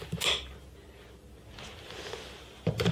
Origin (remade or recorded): recorded